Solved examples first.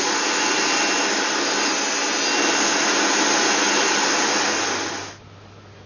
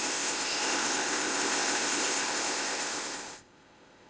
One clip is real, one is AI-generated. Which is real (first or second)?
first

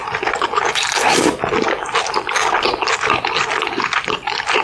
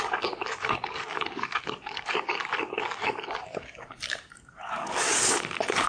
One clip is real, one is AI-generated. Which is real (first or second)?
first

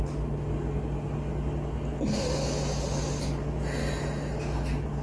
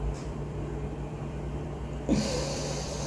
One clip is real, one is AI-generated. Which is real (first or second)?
first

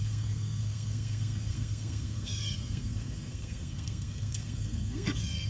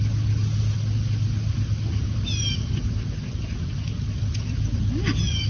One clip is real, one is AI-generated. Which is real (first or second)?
second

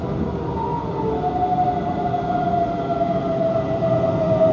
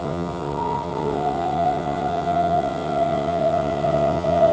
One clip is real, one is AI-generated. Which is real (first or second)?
first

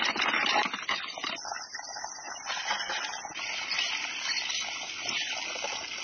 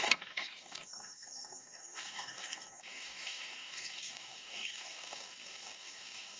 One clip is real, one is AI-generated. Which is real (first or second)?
first